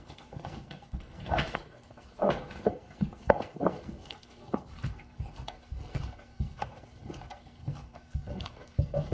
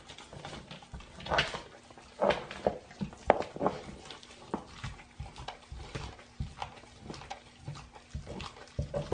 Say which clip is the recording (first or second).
second